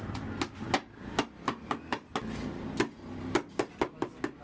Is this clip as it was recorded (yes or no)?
yes